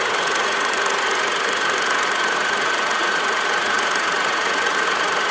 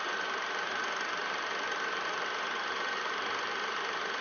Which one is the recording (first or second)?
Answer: second